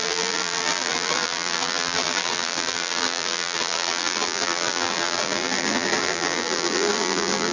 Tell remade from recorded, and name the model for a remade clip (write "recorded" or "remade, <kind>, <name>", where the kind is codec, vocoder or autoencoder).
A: remade, vocoder, BigVGAN v2